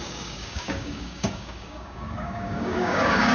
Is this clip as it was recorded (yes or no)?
no